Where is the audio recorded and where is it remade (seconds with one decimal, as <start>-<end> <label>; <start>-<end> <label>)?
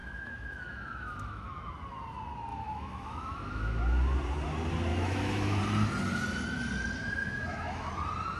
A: 0.0-1.7 remade; 1.7-2.5 recorded; 2.5-3.8 remade; 3.8-4.9 recorded; 4.9-5.6 remade; 5.6-7.2 recorded; 7.2-7.9 remade; 7.9-8.4 recorded